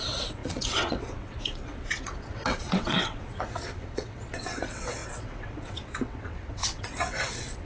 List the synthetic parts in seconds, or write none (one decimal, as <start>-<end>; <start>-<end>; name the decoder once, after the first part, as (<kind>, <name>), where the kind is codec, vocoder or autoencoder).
0.0-7.7 (vocoder, WaveNeXt)